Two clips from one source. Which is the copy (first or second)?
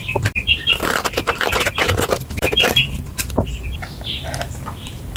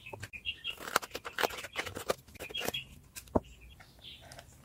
first